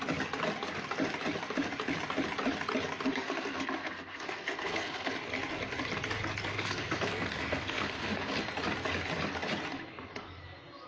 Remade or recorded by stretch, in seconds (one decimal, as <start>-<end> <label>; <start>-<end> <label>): 0.0-3.1 recorded; 3.1-5.1 remade; 5.1-6.5 recorded; 6.5-8.3 remade; 8.3-10.9 recorded

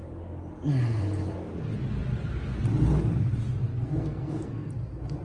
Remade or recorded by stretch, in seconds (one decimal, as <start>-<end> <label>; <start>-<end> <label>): 0.0-3.7 recorded; 3.7-4.7 remade; 4.7-5.2 recorded

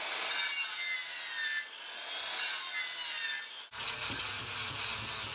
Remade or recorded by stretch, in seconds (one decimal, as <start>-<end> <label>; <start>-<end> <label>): 0.0-5.3 recorded

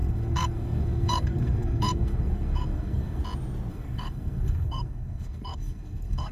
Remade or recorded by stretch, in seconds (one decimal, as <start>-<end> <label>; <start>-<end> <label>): 0.0-3.2 remade; 3.2-3.7 recorded; 3.7-6.3 remade

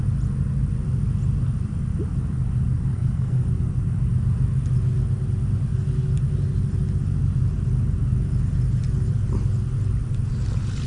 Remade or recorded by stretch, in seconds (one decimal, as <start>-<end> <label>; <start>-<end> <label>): 0.0-2.9 recorded; 2.9-3.5 remade; 3.5-10.9 recorded

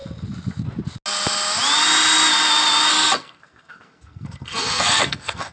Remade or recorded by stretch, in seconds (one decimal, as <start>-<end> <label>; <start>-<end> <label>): 0.0-2.9 recorded; 2.9-5.5 remade

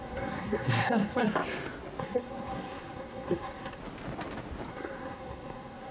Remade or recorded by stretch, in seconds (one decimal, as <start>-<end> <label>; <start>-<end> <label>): 0.0-1.2 remade; 1.2-2.0 recorded; 2.0-3.8 remade; 3.8-4.7 recorded; 4.7-5.9 remade